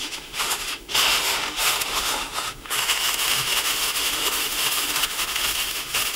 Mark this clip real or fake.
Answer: fake